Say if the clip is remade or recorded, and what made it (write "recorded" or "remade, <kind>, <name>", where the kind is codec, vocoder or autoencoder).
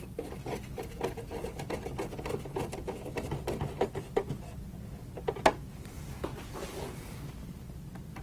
recorded